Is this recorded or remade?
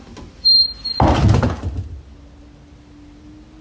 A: recorded